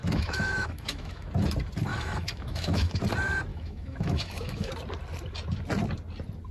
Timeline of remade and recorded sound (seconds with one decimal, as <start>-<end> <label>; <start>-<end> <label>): 0.0-1.3 remade; 1.3-1.9 recorded; 1.9-3.0 remade; 3.0-3.5 recorded; 3.5-4.7 remade; 4.7-6.5 recorded